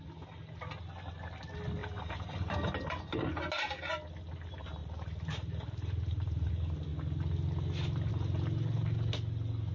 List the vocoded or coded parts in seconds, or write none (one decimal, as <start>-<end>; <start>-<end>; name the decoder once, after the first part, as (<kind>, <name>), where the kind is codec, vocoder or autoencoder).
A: 1.8-2.7 (vocoder, BigVGAN v2); 4.8-6.5

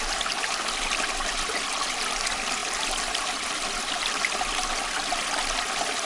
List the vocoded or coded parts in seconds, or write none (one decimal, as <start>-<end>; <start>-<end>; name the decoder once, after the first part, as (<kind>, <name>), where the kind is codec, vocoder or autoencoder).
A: none

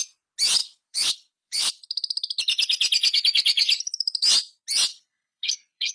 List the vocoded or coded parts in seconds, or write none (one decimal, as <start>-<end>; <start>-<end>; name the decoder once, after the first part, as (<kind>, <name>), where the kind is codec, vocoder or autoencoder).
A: 0.6-1.7 (codec, HILCodec); 4.9-5.9

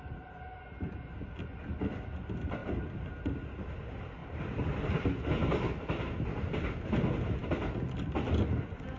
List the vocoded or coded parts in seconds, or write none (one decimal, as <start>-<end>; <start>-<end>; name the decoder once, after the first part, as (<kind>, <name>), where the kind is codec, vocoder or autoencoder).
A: 4.2-4.8 (vocoder, BigVGAN v2)

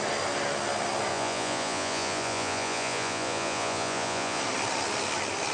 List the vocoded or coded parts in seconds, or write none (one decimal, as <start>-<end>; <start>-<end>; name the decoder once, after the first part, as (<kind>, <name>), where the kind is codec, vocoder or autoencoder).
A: 1.1-4.4 (vocoder, Vocos)